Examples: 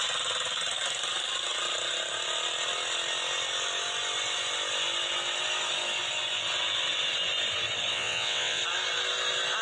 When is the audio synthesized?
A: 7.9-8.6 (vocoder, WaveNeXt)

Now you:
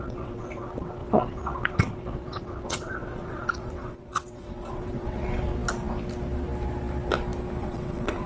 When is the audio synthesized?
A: 0.0-5.5 (vocoder, WaveNeXt); 7.6-8.3

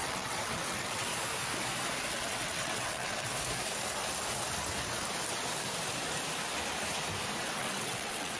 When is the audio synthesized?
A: 0.0-1.1 (vocoder, WaveNeXt); 2.1-3.3; 7.4-8.4

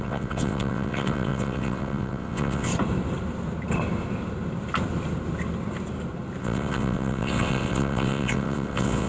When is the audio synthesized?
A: 0.0-2.7 (vocoder, WaveNeXt); 6.4-9.1

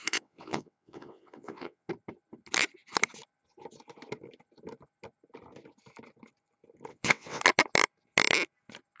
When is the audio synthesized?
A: 0.0-1.9 (vocoder, WaveNeXt); 6.9-7.4

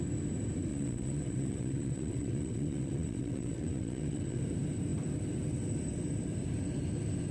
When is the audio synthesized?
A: 0.7-4.4 (vocoder, WaveNeXt)